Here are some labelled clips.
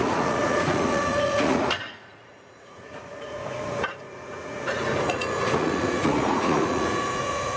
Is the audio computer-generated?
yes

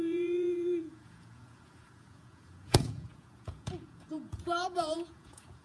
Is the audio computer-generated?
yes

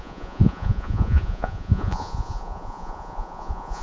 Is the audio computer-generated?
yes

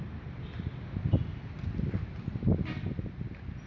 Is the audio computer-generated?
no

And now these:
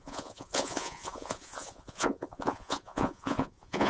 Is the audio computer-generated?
yes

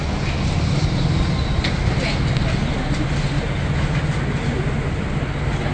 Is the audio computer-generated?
no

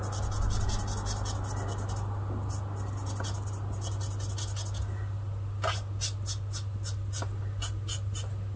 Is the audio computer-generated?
no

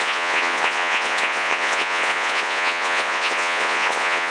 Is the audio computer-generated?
yes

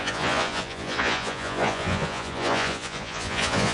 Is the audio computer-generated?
yes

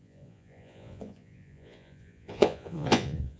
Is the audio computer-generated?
yes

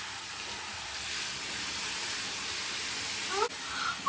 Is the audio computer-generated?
no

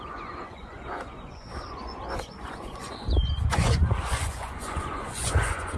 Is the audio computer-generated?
yes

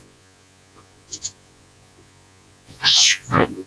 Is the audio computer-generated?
yes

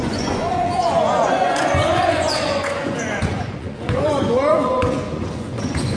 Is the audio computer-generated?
yes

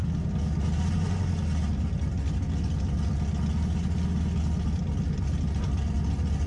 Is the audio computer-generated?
no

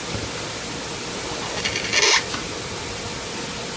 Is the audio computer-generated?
no